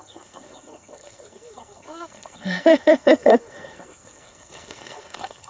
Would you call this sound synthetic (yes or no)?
yes